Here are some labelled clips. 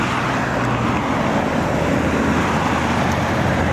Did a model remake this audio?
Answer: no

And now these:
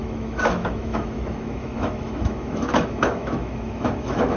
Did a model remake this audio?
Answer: yes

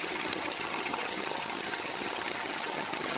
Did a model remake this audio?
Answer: yes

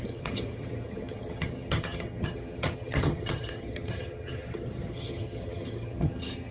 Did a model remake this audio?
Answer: yes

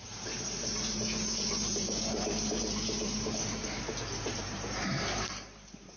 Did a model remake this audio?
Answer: yes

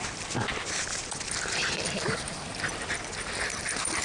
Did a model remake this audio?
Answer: no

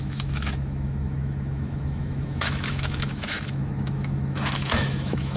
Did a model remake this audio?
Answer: yes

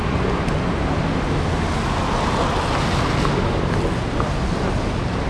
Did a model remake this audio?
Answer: no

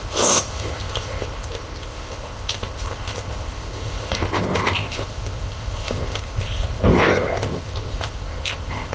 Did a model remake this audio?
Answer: yes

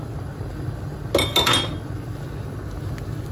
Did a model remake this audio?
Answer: no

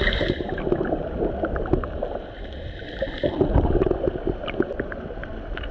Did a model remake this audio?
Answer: no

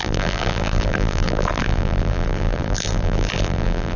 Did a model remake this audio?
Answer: yes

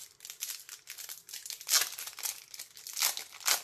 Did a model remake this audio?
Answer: no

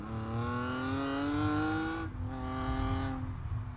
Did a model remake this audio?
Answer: no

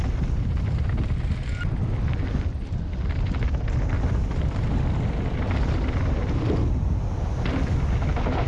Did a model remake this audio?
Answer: no